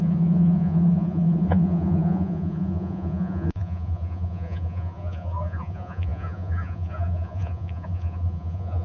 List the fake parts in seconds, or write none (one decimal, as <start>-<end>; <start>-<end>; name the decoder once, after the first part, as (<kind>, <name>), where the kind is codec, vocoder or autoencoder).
0.0-8.8 (vocoder, Vocos)